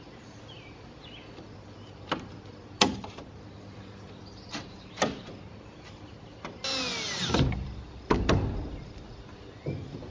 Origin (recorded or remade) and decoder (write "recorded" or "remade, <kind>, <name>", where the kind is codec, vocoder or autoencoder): recorded